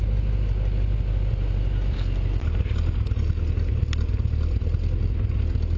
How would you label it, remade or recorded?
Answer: recorded